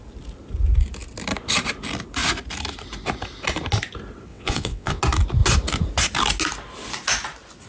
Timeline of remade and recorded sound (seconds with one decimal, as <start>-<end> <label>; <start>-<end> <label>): 0.0-4.3 recorded; 4.3-5.0 remade; 5.0-7.7 recorded

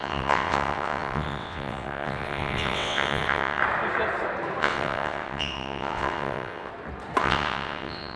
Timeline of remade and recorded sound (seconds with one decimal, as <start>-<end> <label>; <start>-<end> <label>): 0.0-3.6 remade; 3.6-4.6 recorded; 4.6-6.7 remade; 6.7-7.2 recorded; 7.2-8.2 remade

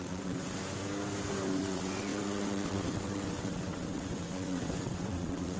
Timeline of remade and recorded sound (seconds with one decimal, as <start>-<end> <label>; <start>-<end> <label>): 0.0-0.6 remade; 0.6-1.6 recorded; 1.6-5.6 remade

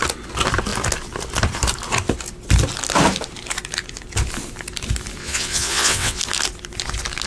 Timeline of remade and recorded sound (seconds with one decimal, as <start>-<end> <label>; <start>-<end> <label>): 0.0-5.2 recorded; 5.2-6.2 remade; 6.2-7.3 recorded

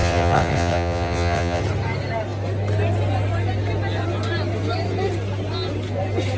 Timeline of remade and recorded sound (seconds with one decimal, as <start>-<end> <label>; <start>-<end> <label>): 0.0-1.6 remade; 1.6-6.4 recorded

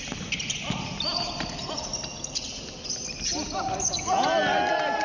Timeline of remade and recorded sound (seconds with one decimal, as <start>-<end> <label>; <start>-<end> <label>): 0.0-5.0 recorded

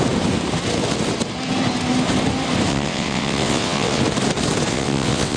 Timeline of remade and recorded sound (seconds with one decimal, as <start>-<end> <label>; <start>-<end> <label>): 0.0-2.7 recorded; 2.7-4.0 remade; 4.0-4.7 recorded; 4.7-5.4 remade